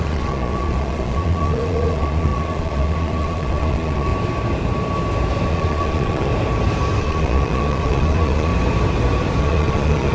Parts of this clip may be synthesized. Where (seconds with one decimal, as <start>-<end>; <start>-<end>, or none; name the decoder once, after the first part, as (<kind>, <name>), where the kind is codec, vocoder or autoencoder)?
0.0-4.1 (vocoder, Vocos); 5.5-6.3; 7.0-8.5; 9.4-10.1